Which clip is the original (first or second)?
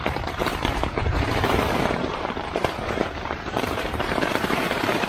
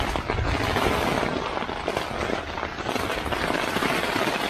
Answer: second